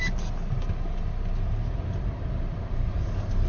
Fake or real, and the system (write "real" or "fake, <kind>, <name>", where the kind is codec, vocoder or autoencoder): real